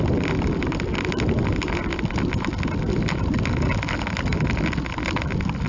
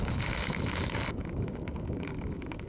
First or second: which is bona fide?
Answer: first